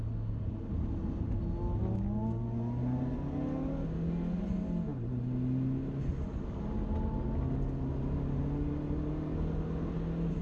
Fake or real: real